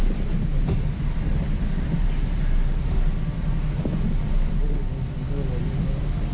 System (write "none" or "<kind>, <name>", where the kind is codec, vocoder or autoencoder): none